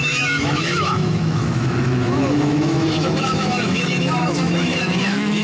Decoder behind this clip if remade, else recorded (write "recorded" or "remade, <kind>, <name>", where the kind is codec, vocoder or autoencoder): remade, autoencoder, DAC-VAE